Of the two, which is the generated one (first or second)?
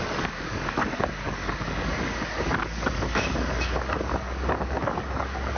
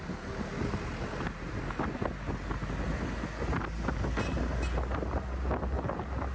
first